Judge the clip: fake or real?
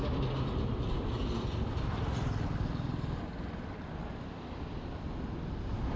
real